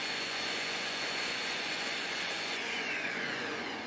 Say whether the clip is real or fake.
fake